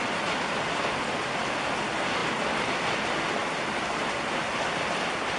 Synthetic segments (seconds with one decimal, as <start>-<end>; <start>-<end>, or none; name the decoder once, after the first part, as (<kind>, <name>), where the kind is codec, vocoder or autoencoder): 2.2-2.8 (vocoder, BigVGAN v2); 3.4-4.4